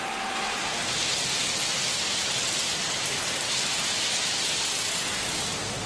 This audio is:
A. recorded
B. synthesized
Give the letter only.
A